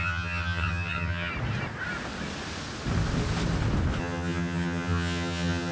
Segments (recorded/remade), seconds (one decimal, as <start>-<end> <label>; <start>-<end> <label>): 0.0-1.3 remade; 1.3-4.0 recorded; 4.0-5.7 remade